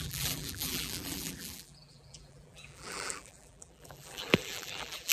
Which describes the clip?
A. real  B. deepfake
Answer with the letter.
B